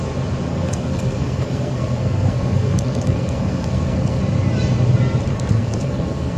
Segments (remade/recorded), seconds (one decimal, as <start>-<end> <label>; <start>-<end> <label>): 0.0-0.5 recorded; 0.5-4.2 remade; 4.2-5.3 recorded; 5.3-6.4 remade